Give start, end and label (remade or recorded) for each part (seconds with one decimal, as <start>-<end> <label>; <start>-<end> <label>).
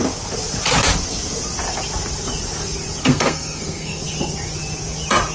0.0-3.0 recorded; 3.0-4.0 remade; 4.0-5.3 recorded